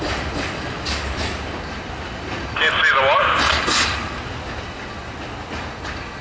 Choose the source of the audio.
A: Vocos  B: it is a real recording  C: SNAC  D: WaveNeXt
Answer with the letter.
B